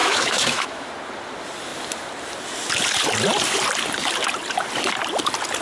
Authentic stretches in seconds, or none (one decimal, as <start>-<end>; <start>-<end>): 0.9-5.6

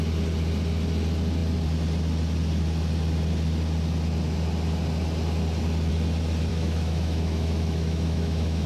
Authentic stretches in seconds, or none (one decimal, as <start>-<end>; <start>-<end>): 0.0-6.5

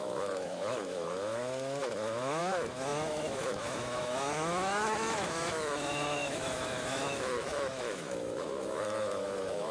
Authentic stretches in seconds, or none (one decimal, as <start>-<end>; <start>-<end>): none

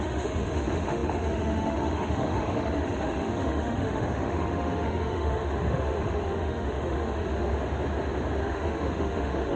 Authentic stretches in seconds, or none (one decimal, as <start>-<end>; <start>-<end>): 7.5-8.4

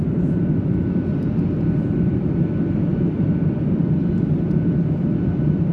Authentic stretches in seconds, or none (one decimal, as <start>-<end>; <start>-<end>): 0.0-5.7

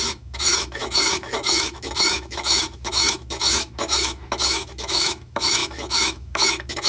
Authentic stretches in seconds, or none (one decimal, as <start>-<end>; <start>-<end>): none

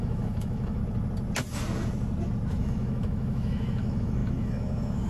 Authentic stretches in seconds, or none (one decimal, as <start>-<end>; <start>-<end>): 0.8-2.6

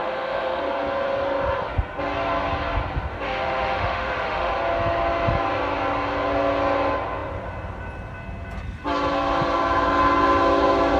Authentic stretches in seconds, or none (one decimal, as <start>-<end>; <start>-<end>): 0.6-3.1; 4.5-11.0